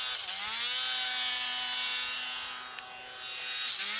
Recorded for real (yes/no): yes